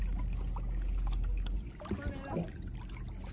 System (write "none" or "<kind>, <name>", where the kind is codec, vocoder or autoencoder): none